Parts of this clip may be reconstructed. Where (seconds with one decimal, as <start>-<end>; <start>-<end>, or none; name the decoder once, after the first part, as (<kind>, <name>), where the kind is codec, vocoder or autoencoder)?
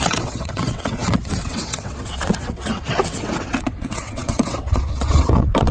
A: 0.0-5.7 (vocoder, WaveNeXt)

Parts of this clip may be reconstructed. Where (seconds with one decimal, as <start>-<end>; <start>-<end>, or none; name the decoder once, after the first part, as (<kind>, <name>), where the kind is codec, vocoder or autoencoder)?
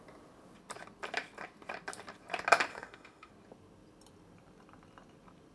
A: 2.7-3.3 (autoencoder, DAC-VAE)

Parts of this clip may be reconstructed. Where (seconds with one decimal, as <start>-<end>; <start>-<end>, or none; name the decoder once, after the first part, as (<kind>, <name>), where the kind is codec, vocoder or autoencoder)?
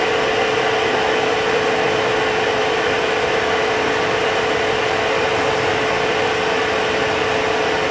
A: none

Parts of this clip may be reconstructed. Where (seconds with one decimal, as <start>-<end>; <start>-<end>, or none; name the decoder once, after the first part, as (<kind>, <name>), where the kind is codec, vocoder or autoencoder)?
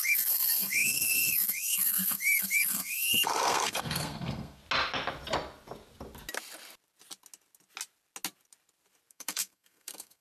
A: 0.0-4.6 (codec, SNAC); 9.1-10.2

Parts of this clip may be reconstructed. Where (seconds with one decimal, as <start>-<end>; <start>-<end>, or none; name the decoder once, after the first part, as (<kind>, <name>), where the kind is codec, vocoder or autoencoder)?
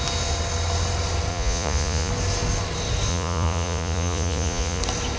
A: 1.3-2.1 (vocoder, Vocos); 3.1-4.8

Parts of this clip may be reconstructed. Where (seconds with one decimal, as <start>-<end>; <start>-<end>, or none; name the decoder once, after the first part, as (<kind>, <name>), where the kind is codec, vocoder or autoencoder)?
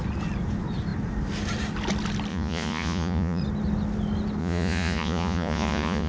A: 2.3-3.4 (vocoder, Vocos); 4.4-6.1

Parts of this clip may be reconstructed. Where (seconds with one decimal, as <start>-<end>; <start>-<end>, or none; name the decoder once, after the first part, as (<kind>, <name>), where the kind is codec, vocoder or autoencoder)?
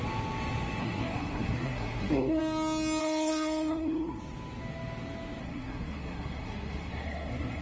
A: 0.8-2.4 (codec, SNAC); 3.0-4.2; 5.4-7.6